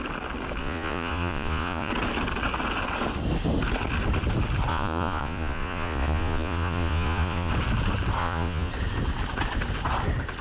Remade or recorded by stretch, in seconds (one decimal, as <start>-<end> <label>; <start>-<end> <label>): 0.0-0.6 recorded; 0.6-1.9 remade; 1.9-4.7 recorded; 4.7-7.5 remade; 7.5-8.2 recorded; 8.2-8.7 remade; 8.7-10.4 recorded